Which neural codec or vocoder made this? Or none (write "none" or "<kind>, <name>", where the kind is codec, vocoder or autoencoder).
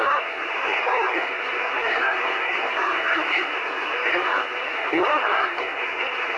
codec, SNAC